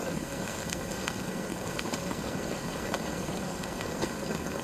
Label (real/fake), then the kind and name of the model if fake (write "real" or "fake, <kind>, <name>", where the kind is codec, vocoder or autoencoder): fake, codec, SNAC